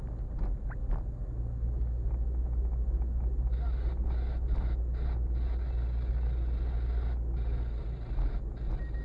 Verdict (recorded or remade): recorded